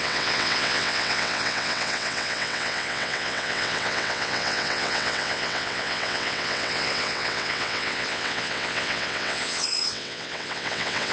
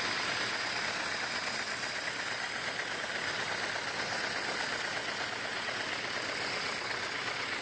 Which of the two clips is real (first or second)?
second